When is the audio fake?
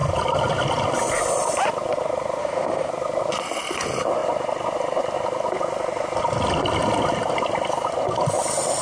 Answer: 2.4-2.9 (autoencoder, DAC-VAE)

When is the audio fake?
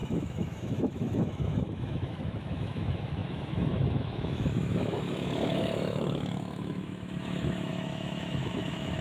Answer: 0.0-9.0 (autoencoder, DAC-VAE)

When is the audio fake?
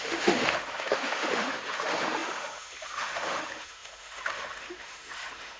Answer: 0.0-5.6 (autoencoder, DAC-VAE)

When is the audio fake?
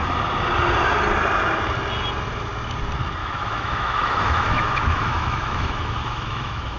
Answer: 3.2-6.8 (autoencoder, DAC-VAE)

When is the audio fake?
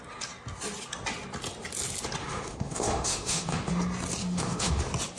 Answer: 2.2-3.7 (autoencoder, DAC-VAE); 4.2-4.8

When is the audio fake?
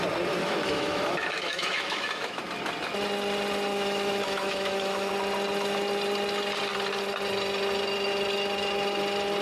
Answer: 0.4-2.4 (autoencoder, DAC-VAE); 3.7-5.1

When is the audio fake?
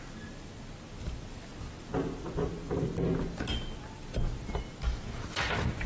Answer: none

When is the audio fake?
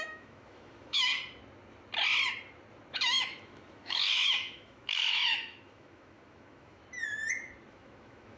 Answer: 0.0-1.1 (autoencoder, DAC-VAE); 2.9-6.8; 7.7-8.4